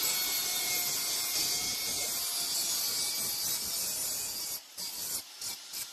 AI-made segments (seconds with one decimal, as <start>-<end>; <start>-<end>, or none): none